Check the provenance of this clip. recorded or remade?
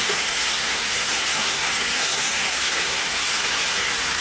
remade